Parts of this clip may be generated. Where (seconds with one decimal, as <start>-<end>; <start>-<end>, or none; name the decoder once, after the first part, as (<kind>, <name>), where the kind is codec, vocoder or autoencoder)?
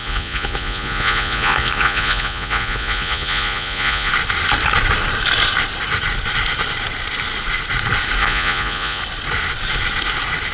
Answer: 0.0-4.1 (vocoder, Vocos); 8.2-9.0